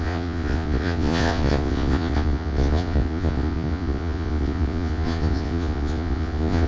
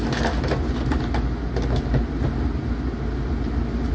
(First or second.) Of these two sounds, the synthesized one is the first